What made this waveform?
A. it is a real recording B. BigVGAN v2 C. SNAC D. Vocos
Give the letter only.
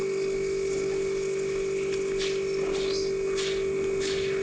A